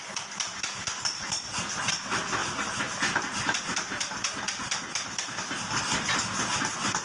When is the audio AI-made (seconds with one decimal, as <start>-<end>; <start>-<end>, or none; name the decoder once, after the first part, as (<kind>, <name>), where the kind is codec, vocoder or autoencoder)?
none